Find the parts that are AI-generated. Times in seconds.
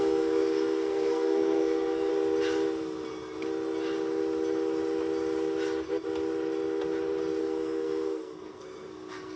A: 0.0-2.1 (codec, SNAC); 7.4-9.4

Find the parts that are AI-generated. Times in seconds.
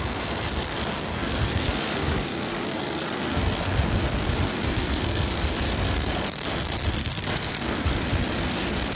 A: 1.1-3.9 (codec, SNAC); 4.7-5.6; 7.0-7.9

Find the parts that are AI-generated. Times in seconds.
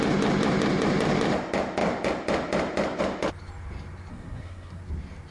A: 4.1-4.8 (codec, SNAC)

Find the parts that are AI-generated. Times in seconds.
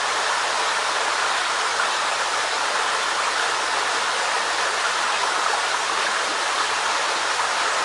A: none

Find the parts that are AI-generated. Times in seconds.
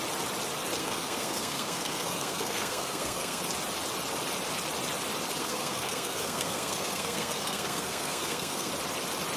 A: 0.8-3.4 (codec, SNAC); 5.4-8.7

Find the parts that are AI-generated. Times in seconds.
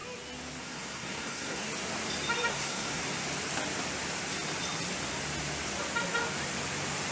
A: 0.6-1.6 (codec, SNAC); 2.5-3.0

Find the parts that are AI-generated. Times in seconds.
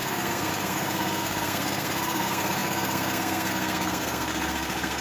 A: 0.0-5.0 (codec, SNAC)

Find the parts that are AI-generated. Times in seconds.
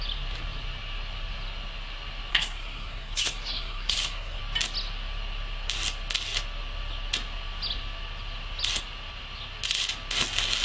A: 2.3-4.4 (codec, SNAC)